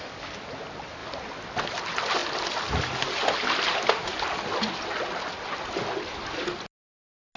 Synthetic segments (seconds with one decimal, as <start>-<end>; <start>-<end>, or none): none